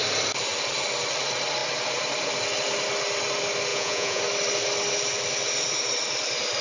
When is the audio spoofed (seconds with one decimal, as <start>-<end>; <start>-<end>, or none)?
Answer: 3.7-4.2